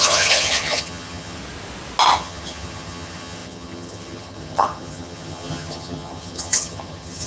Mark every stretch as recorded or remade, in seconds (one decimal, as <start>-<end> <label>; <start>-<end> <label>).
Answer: 0.0-1.4 remade; 1.4-2.1 recorded; 2.1-7.3 remade